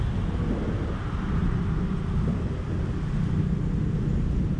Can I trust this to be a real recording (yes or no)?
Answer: yes